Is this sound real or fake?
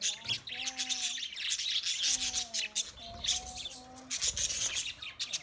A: real